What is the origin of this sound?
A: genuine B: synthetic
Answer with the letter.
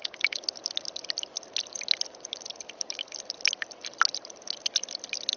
A